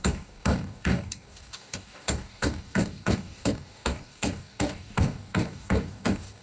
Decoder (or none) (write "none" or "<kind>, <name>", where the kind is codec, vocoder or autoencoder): codec, DAC